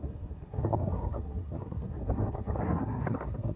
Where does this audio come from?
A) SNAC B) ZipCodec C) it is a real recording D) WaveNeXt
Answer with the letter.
A